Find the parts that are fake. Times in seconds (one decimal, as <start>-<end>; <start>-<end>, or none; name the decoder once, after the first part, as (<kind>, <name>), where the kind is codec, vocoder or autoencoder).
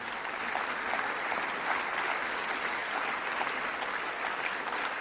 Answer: none